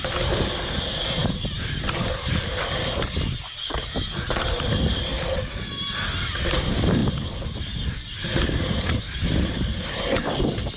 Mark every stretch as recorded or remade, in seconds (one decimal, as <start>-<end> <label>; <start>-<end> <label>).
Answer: 0.0-10.8 recorded